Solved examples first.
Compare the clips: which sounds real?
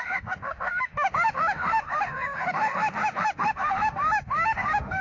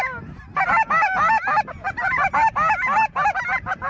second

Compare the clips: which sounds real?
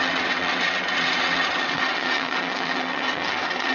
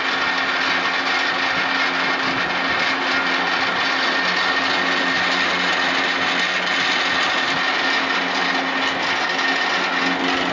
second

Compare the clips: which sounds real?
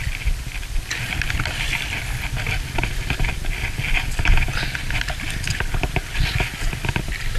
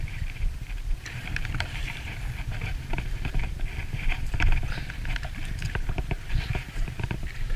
first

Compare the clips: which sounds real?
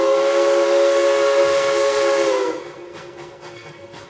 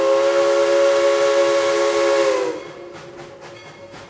second